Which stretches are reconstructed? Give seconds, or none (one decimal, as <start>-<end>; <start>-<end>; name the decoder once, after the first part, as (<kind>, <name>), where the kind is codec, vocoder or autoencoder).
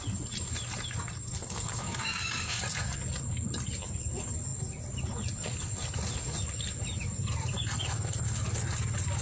1.4-2.6 (codec, DAC)